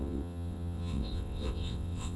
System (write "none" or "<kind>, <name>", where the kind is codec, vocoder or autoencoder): vocoder, WaveNeXt